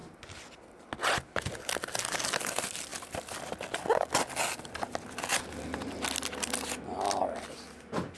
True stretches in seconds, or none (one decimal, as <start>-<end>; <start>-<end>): 0.0-2.9; 3.6-8.2